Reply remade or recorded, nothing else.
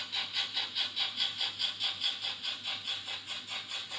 recorded